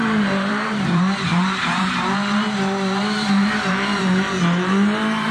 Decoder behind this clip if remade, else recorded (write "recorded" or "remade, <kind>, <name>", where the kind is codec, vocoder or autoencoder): remade, vocoder, BigVGAN v2